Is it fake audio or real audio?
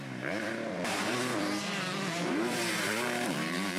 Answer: fake